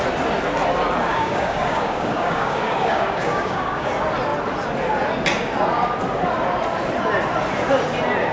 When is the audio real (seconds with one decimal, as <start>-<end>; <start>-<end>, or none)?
0.0-1.1; 3.9-8.3